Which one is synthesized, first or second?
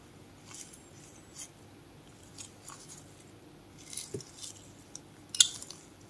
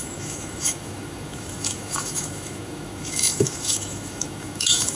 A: second